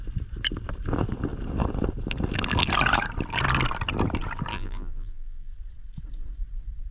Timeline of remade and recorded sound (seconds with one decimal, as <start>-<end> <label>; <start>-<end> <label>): 0.0-4.5 recorded; 4.5-5.5 remade; 5.5-6.9 recorded